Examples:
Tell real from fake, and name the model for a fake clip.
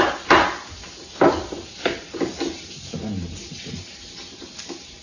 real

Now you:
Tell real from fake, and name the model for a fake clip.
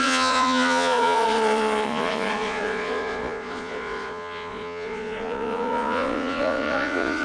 fake, vocoder, Vocos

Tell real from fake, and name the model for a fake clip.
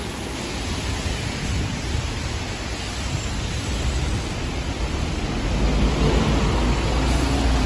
real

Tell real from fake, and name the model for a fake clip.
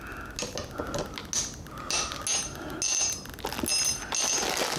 real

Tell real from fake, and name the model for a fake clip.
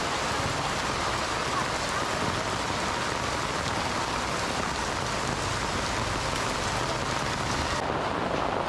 real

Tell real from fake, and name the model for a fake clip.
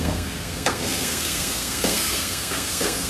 fake, codec, SNAC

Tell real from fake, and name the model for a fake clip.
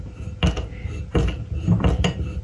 real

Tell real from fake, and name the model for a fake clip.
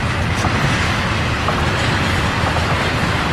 real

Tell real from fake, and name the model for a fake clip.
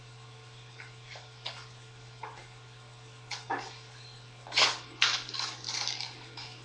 fake, codec, DAC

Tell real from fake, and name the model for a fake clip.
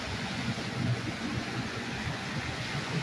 fake, vocoder, Vocos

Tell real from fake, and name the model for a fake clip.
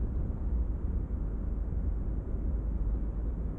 real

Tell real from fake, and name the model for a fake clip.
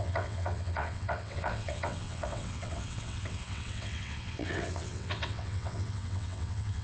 fake, vocoder, WaveNeXt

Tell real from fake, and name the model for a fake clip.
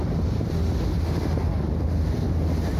real